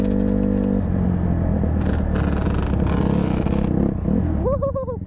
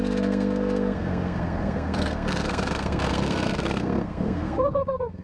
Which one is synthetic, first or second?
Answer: second